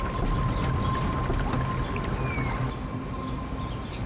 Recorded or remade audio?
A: recorded